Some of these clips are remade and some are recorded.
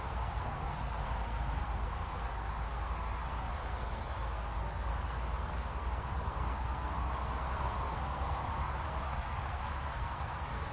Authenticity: remade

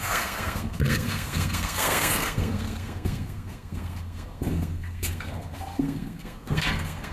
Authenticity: remade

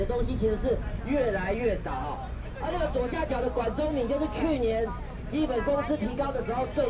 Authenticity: recorded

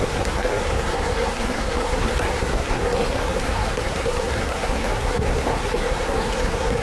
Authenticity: remade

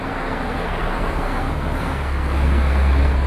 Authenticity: remade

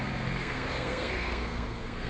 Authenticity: remade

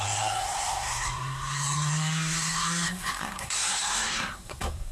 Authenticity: remade